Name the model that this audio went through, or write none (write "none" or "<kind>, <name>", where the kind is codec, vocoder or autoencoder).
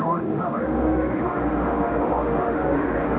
autoencoder, DAC-VAE